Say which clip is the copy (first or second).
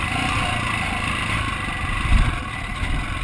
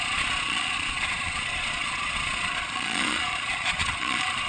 second